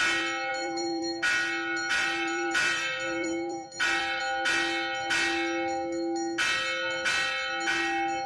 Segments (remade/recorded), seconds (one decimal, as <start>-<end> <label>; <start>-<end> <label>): 0.0-0.5 recorded; 0.5-1.0 remade; 1.0-1.9 recorded; 1.9-4.2 remade; 4.2-8.3 recorded